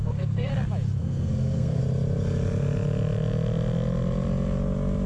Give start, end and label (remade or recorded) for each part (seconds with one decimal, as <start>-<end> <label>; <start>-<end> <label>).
0.0-0.5 remade; 0.5-1.0 recorded; 1.0-1.8 remade; 1.8-5.1 recorded